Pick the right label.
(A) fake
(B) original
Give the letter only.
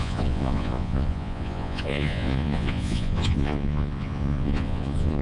A